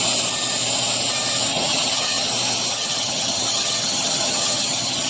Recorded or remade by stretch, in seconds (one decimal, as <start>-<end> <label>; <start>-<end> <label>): 0.0-1.5 recorded; 1.5-2.3 remade; 2.3-2.7 recorded; 2.7-5.1 remade

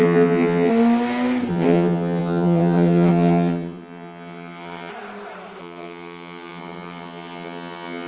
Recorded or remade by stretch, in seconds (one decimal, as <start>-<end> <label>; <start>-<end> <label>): 0.0-0.7 remade; 0.7-1.5 recorded; 1.5-4.9 remade; 4.9-5.6 recorded; 5.6-8.1 remade

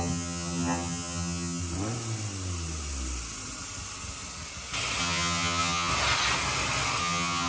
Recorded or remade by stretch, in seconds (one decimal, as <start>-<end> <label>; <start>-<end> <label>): 0.0-1.6 remade; 1.6-5.0 recorded; 5.0-5.9 remade; 5.9-7.0 recorded; 7.0-7.5 remade

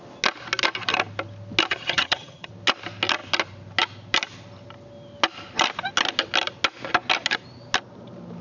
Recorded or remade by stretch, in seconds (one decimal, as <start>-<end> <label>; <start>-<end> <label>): 0.0-1.7 recorded; 1.7-2.5 remade; 2.5-8.4 recorded

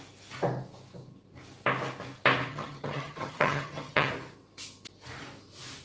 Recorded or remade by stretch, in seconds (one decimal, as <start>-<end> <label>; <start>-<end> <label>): 0.0-2.5 recorded; 2.5-4.1 remade; 4.1-5.8 recorded

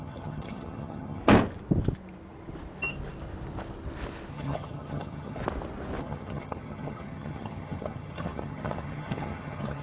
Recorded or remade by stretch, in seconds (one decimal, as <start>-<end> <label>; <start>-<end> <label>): 0.0-1.2 remade; 1.2-4.3 recorded; 4.3-5.4 remade; 5.4-6.0 recorded; 6.0-9.8 remade

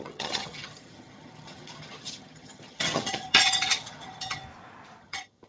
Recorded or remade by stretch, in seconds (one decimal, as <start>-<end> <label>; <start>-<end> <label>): 0.0-4.4 remade; 4.4-5.0 recorded; 5.0-5.5 remade

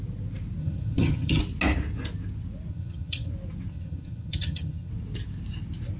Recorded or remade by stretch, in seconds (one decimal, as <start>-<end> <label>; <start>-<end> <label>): 0.0-0.6 recorded; 0.6-1.4 remade; 1.4-2.7 recorded; 2.7-3.3 remade; 3.3-3.7 recorded; 3.7-4.9 remade; 4.9-6.0 recorded